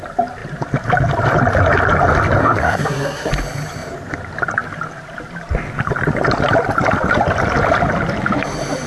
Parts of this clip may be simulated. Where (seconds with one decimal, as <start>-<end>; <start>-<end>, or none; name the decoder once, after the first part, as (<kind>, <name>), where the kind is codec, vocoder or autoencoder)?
2.4-3.3 (codec, SNAC)